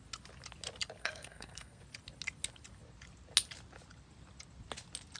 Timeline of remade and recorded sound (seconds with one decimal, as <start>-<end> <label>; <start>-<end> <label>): 0.0-1.0 recorded; 1.0-1.8 remade; 1.8-5.2 recorded